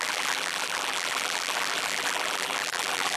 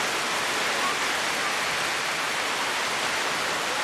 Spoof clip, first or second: first